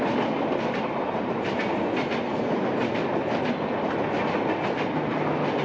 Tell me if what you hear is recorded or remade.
recorded